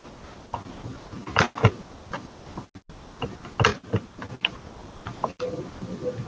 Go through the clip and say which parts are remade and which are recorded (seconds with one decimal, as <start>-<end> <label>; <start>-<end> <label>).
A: 0.0-3.7 recorded; 3.7-4.2 remade; 4.2-4.8 recorded; 4.8-5.3 remade; 5.3-6.3 recorded